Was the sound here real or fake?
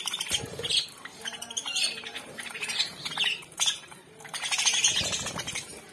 fake